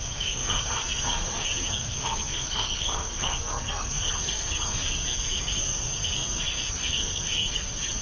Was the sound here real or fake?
fake